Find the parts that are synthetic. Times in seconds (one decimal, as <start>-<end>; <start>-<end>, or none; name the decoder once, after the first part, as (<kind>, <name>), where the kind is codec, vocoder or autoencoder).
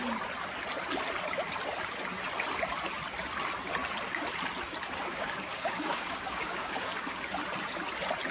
5.1-7.2 (codec, DAC)